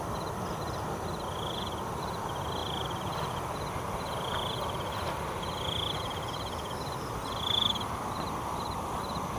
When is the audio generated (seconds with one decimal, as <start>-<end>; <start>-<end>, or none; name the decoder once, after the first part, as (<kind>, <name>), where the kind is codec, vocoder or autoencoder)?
none